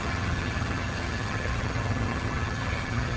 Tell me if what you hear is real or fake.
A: fake